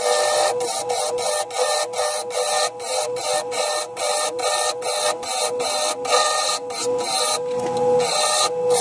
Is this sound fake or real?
real